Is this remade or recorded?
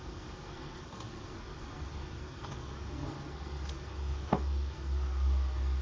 remade